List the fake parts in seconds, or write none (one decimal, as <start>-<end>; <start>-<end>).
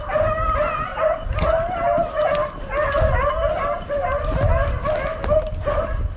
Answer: none